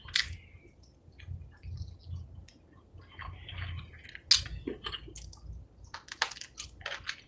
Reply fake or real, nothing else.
real